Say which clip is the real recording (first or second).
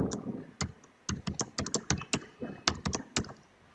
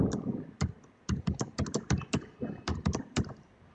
first